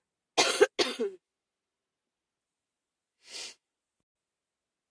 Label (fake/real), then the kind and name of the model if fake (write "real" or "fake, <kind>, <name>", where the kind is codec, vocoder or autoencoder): real